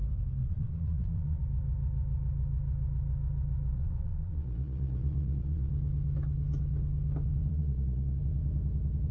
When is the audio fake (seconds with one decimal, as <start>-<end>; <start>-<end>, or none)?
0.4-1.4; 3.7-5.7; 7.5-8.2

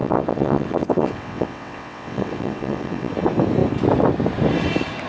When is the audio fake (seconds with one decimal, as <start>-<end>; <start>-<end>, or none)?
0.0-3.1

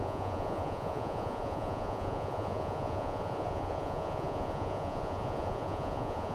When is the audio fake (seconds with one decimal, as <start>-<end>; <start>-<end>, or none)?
0.0-6.3

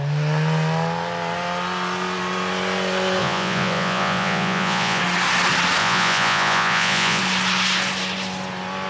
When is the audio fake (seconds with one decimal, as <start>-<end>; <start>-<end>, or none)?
3.2-5.0; 5.8-7.2

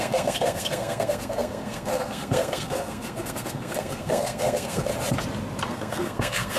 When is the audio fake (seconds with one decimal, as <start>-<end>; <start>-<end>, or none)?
0.0-4.9; 5.7-6.6

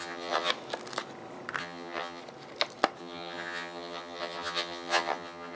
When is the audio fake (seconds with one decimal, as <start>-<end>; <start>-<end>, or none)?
0.0-0.5; 1.6-2.2; 3.0-5.6

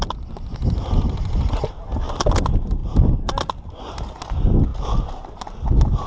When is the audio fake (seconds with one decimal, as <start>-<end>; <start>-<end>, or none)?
none

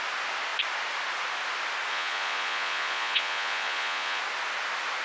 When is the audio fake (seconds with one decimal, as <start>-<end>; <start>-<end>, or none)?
1.9-4.2